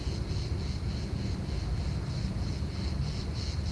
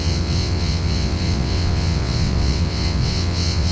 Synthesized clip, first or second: second